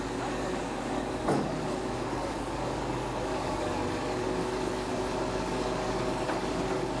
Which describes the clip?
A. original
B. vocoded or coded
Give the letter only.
B